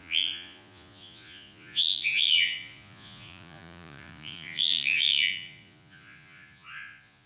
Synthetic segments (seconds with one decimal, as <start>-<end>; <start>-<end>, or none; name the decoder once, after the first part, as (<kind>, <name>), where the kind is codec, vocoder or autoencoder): 0.0-7.3 (vocoder, Vocos)